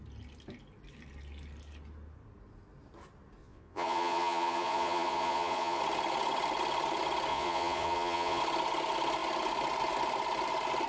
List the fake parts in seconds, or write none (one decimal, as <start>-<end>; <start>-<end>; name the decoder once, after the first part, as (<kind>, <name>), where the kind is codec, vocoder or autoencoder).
3.4-5.8 (vocoder, Vocos); 7.3-8.4